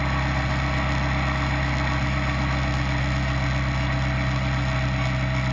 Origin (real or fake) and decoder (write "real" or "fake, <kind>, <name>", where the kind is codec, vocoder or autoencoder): real